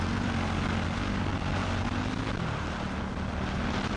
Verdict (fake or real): real